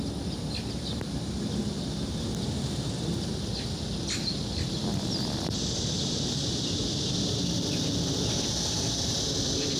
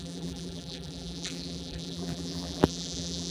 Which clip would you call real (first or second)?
first